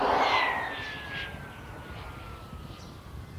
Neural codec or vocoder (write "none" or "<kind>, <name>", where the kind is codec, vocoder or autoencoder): none